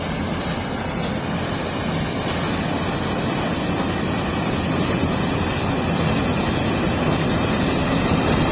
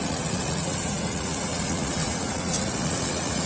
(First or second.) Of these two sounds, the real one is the first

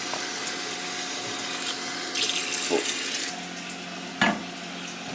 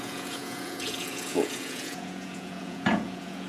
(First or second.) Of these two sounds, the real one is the first